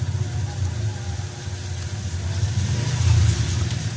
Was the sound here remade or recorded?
recorded